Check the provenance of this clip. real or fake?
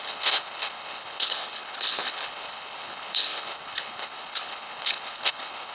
fake